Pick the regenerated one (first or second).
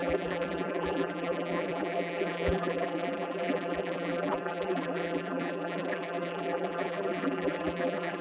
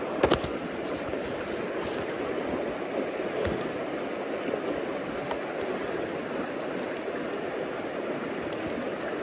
first